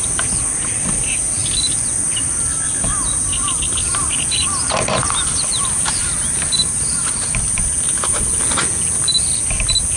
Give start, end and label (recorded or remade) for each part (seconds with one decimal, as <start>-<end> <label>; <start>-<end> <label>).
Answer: 0.0-3.9 recorded; 3.9-8.2 remade; 8.2-10.0 recorded